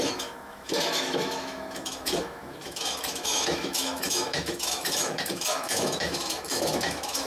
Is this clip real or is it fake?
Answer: fake